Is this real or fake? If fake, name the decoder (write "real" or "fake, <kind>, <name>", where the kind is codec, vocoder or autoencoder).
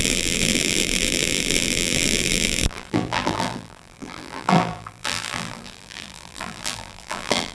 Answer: fake, vocoder, BigVGAN v2